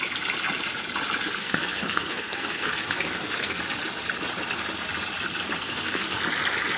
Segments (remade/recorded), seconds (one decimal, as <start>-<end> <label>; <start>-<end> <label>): 0.0-1.4 recorded; 1.4-3.6 remade; 3.6-5.6 recorded; 5.6-6.2 remade; 6.2-6.8 recorded